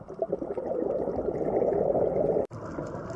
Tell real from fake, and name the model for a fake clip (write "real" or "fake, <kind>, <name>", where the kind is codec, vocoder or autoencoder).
real